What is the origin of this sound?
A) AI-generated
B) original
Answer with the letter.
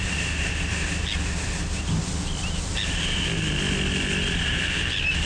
B